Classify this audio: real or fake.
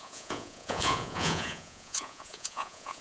fake